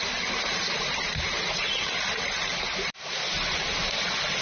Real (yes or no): yes